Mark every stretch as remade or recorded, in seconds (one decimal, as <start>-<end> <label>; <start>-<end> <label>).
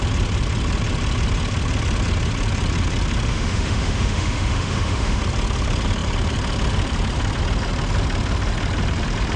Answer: 0.0-3.3 recorded; 3.3-5.2 remade; 5.2-9.4 recorded